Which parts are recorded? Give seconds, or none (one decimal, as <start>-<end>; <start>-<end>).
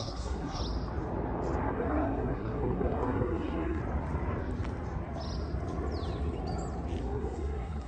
0.6-1.6; 3.8-7.0